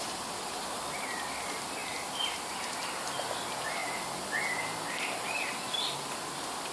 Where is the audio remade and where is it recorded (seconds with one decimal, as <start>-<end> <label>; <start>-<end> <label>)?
0.0-6.7 recorded